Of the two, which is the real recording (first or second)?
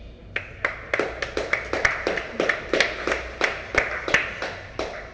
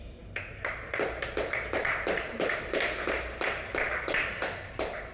first